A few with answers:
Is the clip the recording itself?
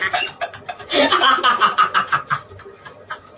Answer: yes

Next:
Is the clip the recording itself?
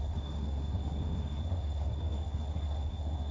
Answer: no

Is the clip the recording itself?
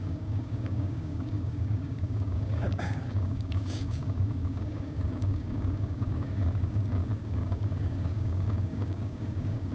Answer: no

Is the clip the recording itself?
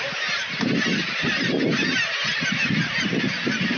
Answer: yes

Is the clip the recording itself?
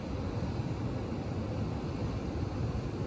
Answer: yes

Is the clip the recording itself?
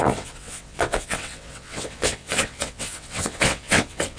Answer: no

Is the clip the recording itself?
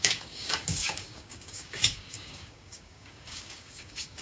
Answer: no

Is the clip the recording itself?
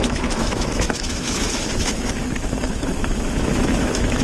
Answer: no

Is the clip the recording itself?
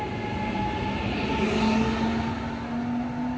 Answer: yes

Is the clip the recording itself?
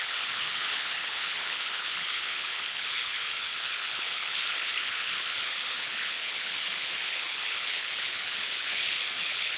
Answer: no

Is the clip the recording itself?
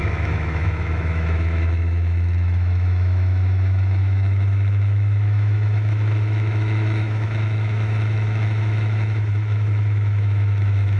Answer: no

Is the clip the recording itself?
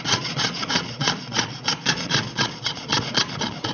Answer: no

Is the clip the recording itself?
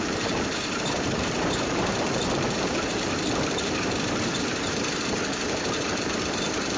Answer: no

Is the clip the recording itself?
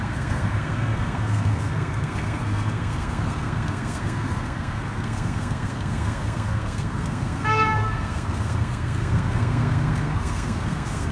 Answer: no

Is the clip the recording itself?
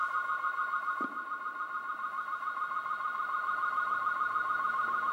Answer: no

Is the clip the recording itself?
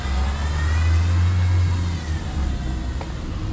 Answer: yes